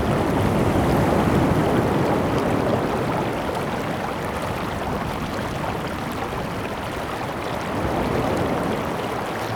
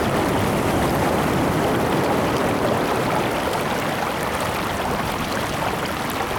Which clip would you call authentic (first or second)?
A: first